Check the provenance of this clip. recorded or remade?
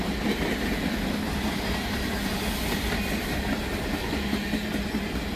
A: recorded